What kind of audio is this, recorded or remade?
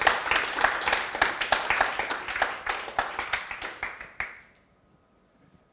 recorded